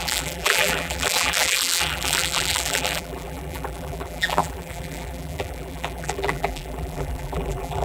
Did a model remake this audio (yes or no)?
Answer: yes